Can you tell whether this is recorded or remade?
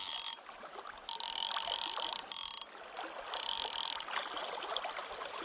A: recorded